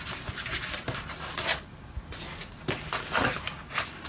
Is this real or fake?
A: real